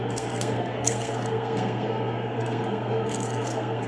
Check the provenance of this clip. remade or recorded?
remade